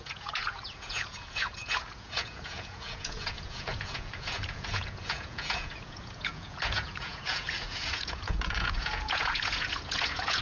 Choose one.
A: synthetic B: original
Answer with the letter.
A